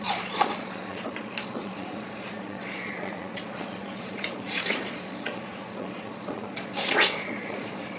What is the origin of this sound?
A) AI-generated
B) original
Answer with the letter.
A